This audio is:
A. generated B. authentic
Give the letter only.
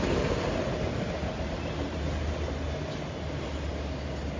B